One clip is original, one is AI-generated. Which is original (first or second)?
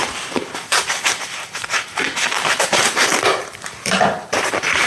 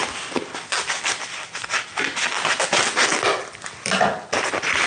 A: second